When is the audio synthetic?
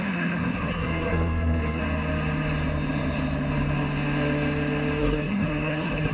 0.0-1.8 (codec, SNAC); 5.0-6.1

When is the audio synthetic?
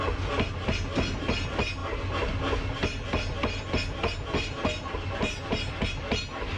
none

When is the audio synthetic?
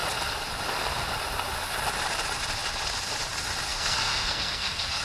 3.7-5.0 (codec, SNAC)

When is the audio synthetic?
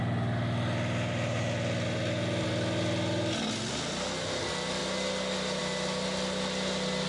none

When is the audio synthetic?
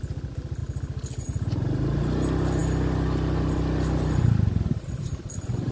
none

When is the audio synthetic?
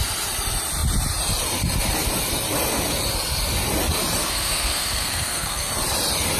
4.2-5.7 (codec, SNAC)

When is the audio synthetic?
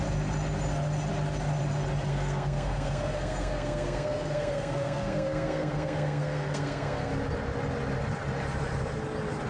2.1-7.1 (codec, SNAC)